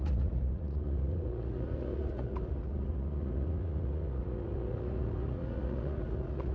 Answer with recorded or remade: remade